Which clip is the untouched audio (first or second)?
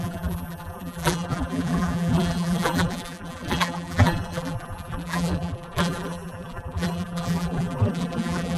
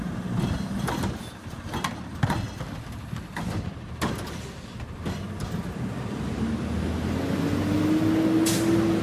second